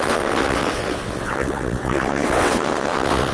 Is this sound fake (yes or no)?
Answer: yes